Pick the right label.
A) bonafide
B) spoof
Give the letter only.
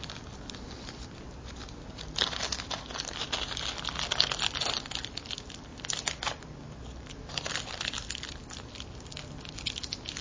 A